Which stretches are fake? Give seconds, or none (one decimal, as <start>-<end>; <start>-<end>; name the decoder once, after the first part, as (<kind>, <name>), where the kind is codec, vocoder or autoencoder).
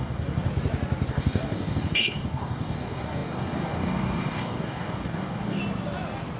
0.0-0.5 (codec, DAC); 1.1-5.6